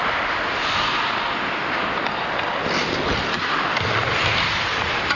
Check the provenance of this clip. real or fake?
real